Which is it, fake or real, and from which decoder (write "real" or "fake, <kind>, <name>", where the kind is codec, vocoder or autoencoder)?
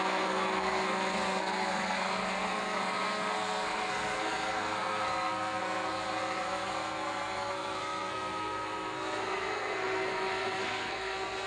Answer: fake, codec, SNAC